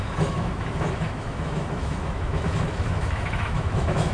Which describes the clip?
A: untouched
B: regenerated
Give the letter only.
B